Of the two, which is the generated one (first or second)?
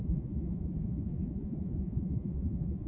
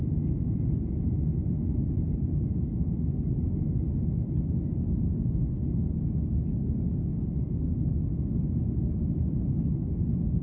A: first